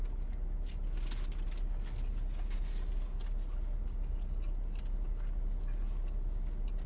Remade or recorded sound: recorded